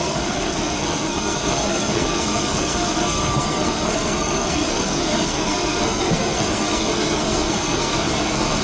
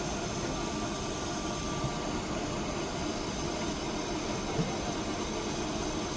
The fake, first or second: first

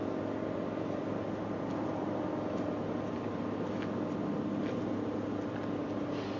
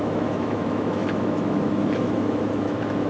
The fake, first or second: second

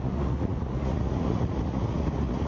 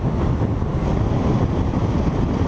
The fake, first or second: first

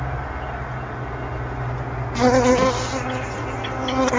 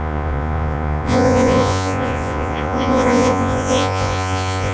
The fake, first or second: second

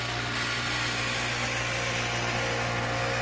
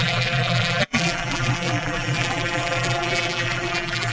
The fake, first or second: second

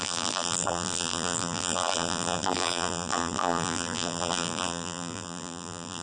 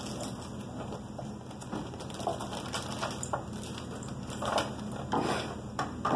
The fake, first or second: first